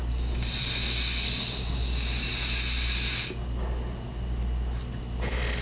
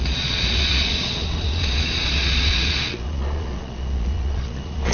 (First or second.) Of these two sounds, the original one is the first